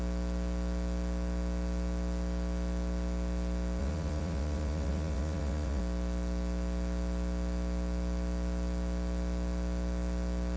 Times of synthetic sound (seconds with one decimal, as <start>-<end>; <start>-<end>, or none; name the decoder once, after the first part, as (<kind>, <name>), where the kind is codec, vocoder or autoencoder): 3.8-5.8 (vocoder, Vocos)